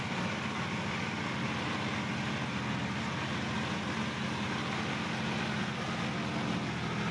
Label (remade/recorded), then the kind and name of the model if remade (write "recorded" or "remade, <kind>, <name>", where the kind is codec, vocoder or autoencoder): recorded